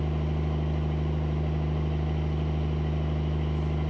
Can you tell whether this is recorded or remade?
recorded